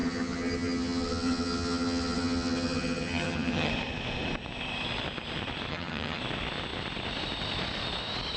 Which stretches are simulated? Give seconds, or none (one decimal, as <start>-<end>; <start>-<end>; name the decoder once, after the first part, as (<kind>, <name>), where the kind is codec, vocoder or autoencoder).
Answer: 0.0-3.7 (vocoder, HiFi-GAN); 5.7-6.2

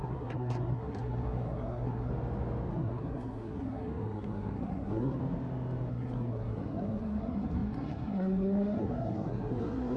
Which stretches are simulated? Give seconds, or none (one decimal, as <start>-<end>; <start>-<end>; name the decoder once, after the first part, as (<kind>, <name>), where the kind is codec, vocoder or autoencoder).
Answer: 0.0-2.1 (codec, SNAC); 2.7-5.2; 5.9-10.0

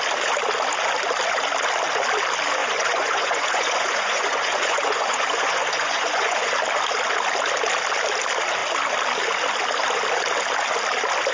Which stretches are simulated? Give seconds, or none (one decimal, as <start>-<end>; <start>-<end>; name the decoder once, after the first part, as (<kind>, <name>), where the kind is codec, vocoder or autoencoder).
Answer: 2.6-6.5 (vocoder, Vocos)

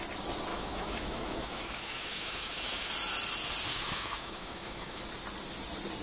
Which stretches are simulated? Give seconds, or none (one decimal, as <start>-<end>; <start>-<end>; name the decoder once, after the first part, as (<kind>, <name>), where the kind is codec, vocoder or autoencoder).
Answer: 0.5-2.9 (autoencoder, DAC-VAE); 3.7-5.0

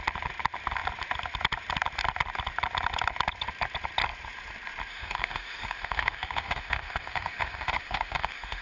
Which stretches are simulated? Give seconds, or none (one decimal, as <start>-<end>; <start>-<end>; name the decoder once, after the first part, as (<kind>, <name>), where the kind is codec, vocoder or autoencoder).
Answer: 4.9-8.6 (autoencoder, DAC-VAE)

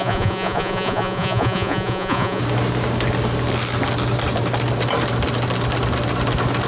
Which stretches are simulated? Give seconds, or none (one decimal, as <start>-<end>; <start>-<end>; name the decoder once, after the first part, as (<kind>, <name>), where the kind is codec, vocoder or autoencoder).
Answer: 0.0-2.4 (vocoder, Vocos)

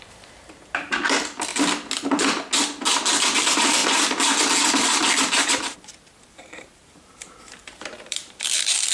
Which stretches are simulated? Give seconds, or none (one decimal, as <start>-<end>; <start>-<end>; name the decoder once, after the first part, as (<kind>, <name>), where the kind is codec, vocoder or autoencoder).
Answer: 0.0-1.5 (vocoder, BigVGAN v2); 3.4-3.8; 6.2-8.9

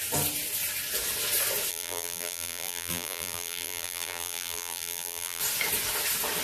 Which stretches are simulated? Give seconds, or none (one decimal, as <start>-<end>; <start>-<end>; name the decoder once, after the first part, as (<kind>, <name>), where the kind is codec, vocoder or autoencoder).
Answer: 1.7-5.4 (vocoder, BigVGAN v2)